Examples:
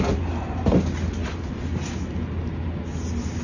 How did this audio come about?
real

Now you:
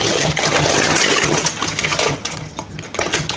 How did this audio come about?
fake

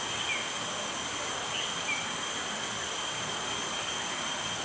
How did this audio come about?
real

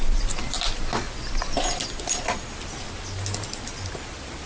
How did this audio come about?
real